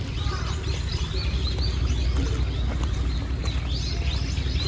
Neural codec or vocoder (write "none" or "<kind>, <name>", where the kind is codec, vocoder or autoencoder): none